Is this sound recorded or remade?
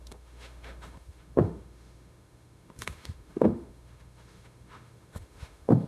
remade